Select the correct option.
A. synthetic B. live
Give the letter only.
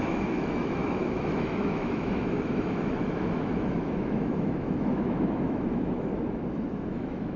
A